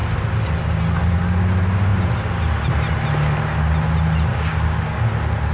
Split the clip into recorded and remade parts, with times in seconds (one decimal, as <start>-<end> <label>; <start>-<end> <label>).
0.0-4.3 recorded; 4.3-5.0 remade; 5.0-5.5 recorded